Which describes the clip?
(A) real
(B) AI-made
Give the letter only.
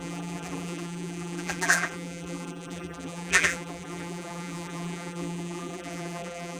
B